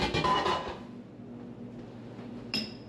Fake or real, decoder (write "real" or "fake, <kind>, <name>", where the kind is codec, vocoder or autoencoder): real